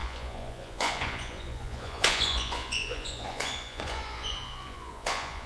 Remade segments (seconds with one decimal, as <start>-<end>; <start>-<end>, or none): 0.0-5.5